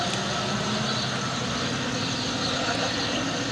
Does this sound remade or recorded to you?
recorded